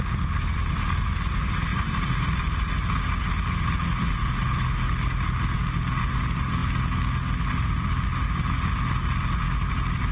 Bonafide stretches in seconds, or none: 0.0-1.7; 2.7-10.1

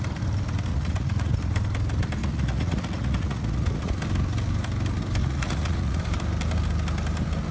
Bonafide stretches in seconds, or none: 0.0-0.7; 1.4-2.2; 3.9-5.2; 6.0-7.5

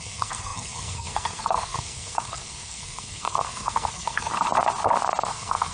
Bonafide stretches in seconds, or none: 4.3-5.2

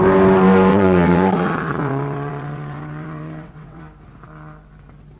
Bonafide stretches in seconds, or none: 0.0-0.7; 3.8-5.2

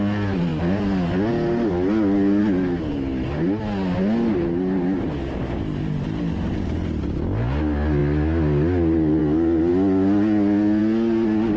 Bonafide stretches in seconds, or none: 0.0-11.6

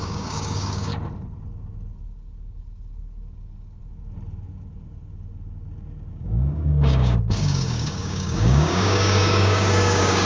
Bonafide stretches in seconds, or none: 0.9-6.1